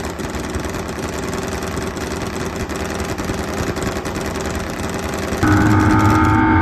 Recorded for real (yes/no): yes